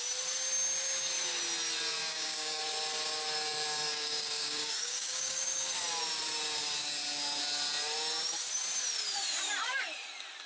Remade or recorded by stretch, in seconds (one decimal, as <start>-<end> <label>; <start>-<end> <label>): 0.0-2.0 recorded; 2.0-2.6 remade; 2.6-3.9 recorded; 3.9-5.7 remade; 5.7-10.5 recorded